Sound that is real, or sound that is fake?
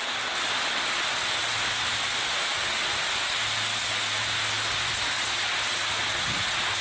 real